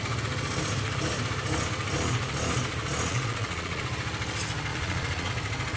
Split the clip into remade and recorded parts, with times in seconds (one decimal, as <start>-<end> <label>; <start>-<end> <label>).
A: 0.0-3.1 recorded; 3.1-3.8 remade; 3.8-4.7 recorded; 4.7-5.3 remade; 5.3-5.8 recorded